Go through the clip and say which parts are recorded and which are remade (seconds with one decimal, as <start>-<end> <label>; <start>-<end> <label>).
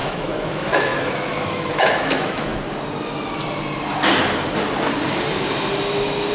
0.0-2.5 remade; 2.5-6.3 recorded